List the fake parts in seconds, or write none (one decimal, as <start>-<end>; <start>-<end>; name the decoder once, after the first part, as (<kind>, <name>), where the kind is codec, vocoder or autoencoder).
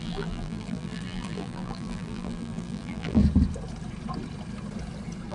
0.0-3.2 (vocoder, BigVGAN v2)